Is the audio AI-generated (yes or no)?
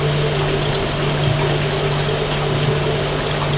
no